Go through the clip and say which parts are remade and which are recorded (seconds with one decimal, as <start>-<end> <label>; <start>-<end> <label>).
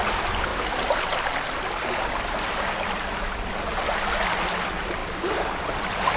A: 0.0-6.2 recorded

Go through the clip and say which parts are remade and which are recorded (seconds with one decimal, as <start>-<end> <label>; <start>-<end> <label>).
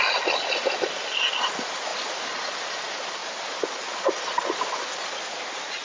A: 0.0-5.8 recorded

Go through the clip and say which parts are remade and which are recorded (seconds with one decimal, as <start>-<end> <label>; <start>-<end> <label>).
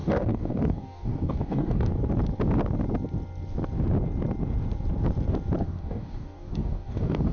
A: 0.0-1.9 remade; 1.9-5.6 recorded; 5.6-7.3 remade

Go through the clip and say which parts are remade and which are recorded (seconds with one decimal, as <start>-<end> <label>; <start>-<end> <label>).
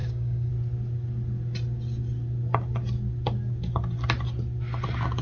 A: 0.0-0.5 remade; 0.5-5.2 recorded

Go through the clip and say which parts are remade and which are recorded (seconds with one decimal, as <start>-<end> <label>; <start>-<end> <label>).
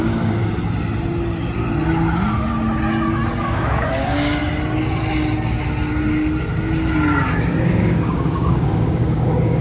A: 0.0-0.4 remade; 0.4-3.4 recorded; 3.4-4.4 remade; 4.4-7.6 recorded; 7.6-9.6 remade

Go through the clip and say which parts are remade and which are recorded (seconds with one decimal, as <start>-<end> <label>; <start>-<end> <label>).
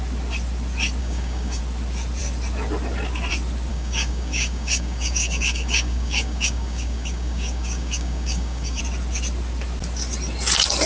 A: 0.0-1.0 recorded; 1.0-1.6 remade; 1.6-3.7 recorded; 3.7-8.8 remade; 8.8-10.9 recorded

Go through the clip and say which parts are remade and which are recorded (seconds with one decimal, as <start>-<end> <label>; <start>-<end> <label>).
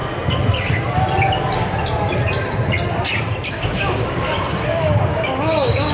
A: 0.0-3.5 recorded; 3.5-5.9 remade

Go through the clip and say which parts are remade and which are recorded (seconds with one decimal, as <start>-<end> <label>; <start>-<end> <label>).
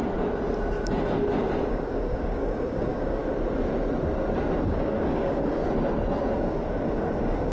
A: 0.0-1.7 recorded; 1.7-3.2 remade; 3.2-4.6 recorded; 4.6-5.6 remade; 5.6-6.3 recorded; 6.3-7.5 remade